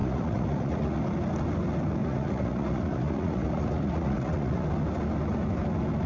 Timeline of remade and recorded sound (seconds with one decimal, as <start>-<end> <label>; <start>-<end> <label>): 0.0-1.0 remade; 1.0-2.0 recorded; 2.0-4.6 remade; 4.6-6.1 recorded